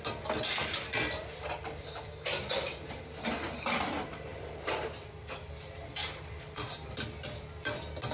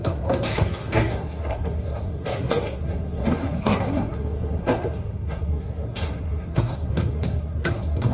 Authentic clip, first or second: first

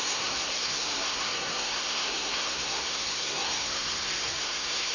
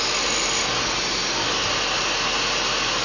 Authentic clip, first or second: second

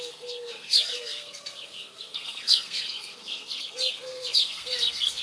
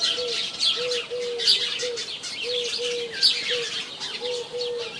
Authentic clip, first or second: second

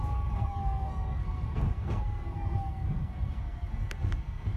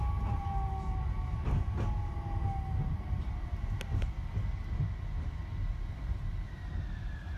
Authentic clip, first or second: second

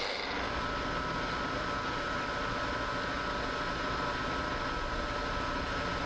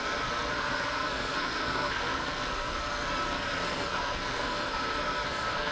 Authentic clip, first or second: first